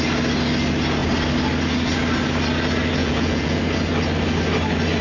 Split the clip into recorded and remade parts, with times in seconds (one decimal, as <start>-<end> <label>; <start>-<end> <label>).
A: 0.0-3.0 recorded; 3.0-3.6 remade; 3.6-5.0 recorded